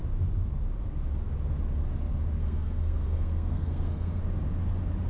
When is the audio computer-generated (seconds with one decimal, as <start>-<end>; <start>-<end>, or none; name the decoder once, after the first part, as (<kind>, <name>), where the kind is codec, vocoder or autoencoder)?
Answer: 2.4-4.2 (codec, SNAC)